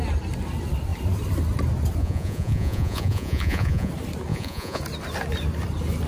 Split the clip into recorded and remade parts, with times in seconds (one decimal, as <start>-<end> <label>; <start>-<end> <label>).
0.0-2.0 recorded; 2.0-3.9 remade; 3.9-4.3 recorded; 4.3-4.8 remade; 4.8-6.1 recorded